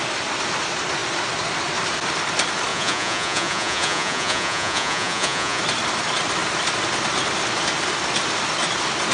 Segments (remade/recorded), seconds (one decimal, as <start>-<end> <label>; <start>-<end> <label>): 0.0-2.7 recorded; 2.7-5.6 remade; 5.6-9.1 recorded